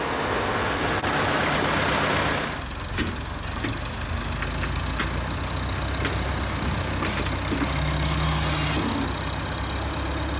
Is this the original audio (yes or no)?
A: yes